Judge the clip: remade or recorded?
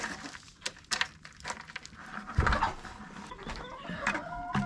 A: recorded